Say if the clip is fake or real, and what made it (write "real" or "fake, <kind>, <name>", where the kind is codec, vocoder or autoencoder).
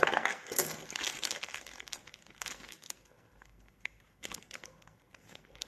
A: fake, codec, SNAC